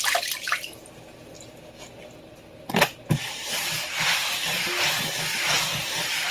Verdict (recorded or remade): recorded